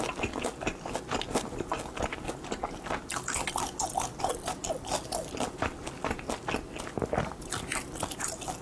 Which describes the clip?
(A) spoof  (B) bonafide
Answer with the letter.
B